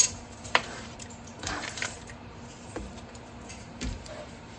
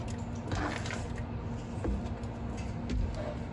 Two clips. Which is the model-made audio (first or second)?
first